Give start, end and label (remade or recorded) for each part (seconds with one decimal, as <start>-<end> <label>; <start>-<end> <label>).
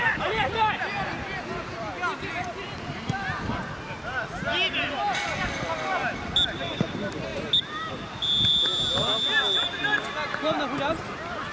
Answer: 0.0-11.5 recorded